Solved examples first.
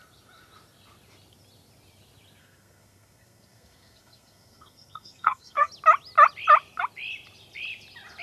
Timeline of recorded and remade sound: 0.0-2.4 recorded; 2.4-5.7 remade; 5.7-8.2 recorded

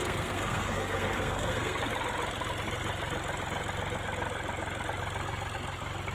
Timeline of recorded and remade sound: 0.0-1.8 remade; 1.8-6.1 recorded

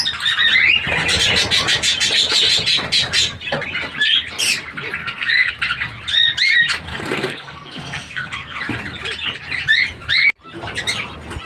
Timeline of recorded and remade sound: 0.0-5.0 recorded; 5.0-5.5 remade; 5.5-6.9 recorded; 6.9-8.6 remade; 8.6-11.5 recorded

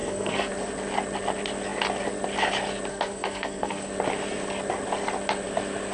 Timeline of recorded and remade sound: 0.0-0.5 remade; 0.5-2.9 recorded; 2.9-3.9 remade; 3.9-5.9 recorded

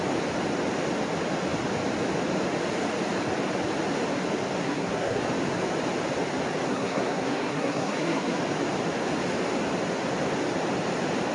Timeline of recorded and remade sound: 0.0-4.6 recorded; 4.6-5.2 remade; 5.2-6.7 recorded; 6.7-8.4 remade; 8.4-11.3 recorded

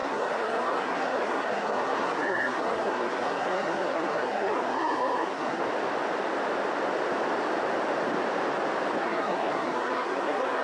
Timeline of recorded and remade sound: 0.0-5.6 remade; 5.6-9.0 recorded; 9.0-10.6 remade

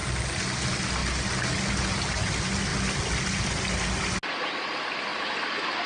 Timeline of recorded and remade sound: 0.0-5.9 recorded

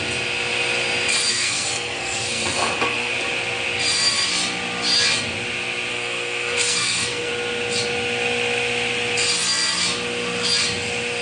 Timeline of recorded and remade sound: 0.0-1.3 recorded; 1.3-3.1 remade; 3.1-5.9 recorded; 5.9-7.3 remade; 7.3-11.2 recorded